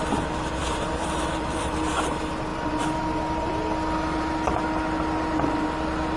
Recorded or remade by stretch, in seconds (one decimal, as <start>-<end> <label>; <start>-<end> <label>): 0.0-0.6 recorded; 0.6-1.9 remade; 1.9-6.2 recorded